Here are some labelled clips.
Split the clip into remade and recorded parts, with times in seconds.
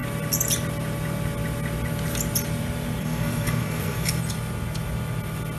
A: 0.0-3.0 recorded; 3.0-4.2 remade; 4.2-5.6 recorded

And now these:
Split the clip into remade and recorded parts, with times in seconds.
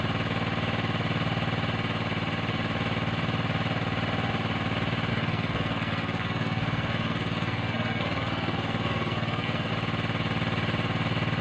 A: 0.0-5.1 recorded; 5.1-9.7 remade; 9.7-11.4 recorded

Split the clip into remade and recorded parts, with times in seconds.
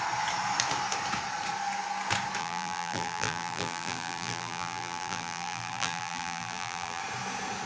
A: 0.0-2.4 recorded; 2.4-7.0 remade; 7.0-7.7 recorded